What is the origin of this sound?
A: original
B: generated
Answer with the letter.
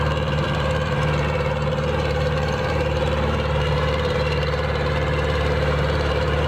B